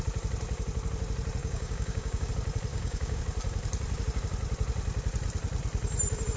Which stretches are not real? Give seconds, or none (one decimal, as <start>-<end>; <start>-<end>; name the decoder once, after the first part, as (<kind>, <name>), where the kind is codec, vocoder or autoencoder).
1.4-2.3 (codec, DAC); 2.7-3.2